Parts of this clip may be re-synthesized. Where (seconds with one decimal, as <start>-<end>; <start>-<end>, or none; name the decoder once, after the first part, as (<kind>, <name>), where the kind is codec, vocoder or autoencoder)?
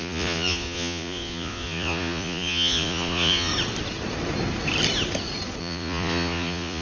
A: 0.0-3.5 (vocoder, Vocos); 5.6-6.8